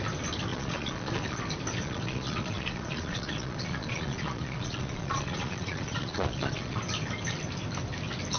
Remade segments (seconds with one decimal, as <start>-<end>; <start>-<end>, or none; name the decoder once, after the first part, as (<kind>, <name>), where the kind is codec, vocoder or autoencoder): 0.5-1.4 (vocoder, Vocos); 1.8-6.8